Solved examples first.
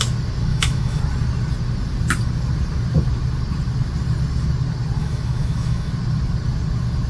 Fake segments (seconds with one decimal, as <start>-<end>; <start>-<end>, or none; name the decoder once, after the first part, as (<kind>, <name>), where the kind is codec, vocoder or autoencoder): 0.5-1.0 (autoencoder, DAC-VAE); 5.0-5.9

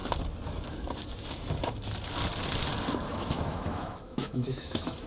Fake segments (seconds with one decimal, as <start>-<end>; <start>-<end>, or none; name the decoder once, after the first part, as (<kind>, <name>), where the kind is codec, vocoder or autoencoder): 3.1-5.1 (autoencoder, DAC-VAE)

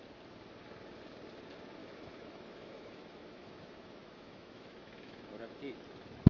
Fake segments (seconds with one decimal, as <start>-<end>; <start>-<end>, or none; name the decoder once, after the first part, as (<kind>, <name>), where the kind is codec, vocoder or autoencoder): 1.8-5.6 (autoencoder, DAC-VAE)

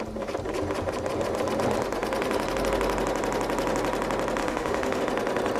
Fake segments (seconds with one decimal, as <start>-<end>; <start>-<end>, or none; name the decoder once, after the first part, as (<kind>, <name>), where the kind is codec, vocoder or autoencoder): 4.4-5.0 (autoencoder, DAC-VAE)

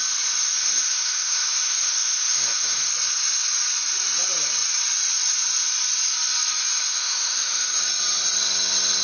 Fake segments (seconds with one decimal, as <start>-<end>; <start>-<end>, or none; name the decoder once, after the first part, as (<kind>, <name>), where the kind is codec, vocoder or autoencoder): 0.4-2.9 (autoencoder, DAC-VAE); 6.7-7.8

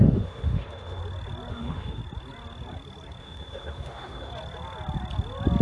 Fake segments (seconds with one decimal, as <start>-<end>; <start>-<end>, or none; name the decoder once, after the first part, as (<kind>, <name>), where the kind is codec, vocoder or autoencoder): 0.0-1.0 (autoencoder, DAC-VAE); 1.5-2.0; 3.2-4.3